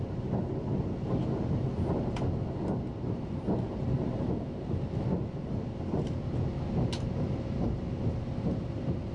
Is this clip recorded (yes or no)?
yes